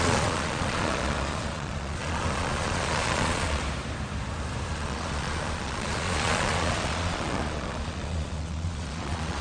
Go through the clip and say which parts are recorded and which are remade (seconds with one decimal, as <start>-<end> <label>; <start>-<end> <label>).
0.0-3.6 remade; 3.6-4.7 recorded; 4.7-9.4 remade